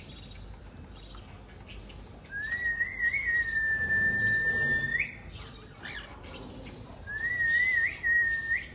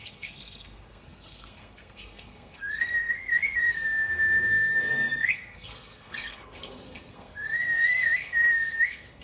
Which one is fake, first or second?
second